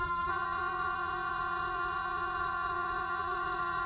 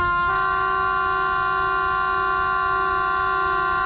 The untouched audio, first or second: second